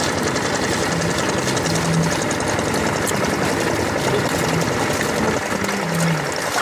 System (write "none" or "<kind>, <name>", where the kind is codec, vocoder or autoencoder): none